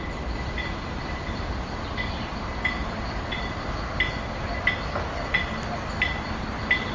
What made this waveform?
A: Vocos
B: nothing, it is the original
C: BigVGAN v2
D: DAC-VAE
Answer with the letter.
B